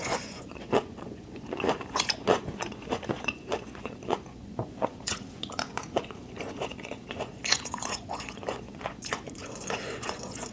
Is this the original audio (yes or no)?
no